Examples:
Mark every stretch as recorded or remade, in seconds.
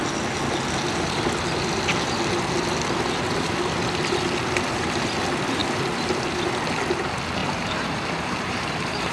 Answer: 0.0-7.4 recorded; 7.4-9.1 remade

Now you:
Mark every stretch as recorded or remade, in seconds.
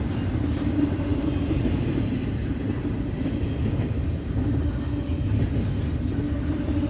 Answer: 0.0-6.9 recorded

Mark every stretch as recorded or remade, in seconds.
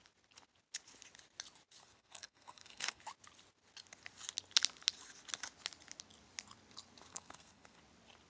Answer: 0.0-1.8 recorded; 1.8-3.0 remade; 3.0-7.1 recorded; 7.1-7.8 remade; 7.8-8.3 recorded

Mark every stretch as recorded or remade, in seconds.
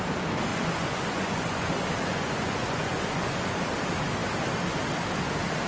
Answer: 0.0-0.5 recorded; 0.5-1.7 remade; 1.7-2.1 recorded; 2.1-3.5 remade; 3.5-5.7 recorded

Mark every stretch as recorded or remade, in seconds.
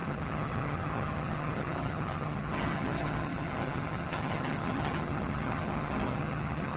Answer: 0.0-6.8 remade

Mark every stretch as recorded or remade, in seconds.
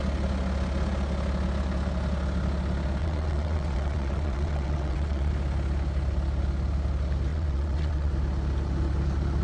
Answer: 0.0-3.0 recorded; 3.0-5.3 remade; 5.3-7.3 recorded; 7.3-8.1 remade; 8.1-9.4 recorded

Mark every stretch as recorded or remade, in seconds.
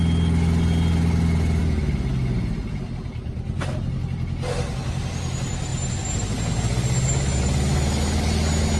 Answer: 0.0-8.8 recorded